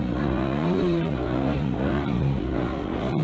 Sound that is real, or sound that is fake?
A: fake